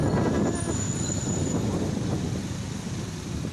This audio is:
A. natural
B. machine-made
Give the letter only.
A